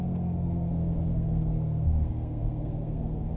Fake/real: fake